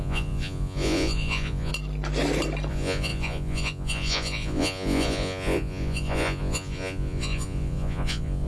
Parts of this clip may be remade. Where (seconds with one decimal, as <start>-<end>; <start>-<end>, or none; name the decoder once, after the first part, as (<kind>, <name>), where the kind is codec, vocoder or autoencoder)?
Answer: 0.0-1.7 (vocoder, Vocos); 2.7-8.5